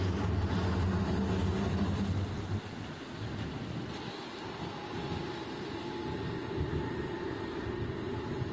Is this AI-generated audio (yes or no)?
no